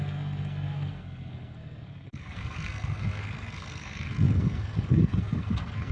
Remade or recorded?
remade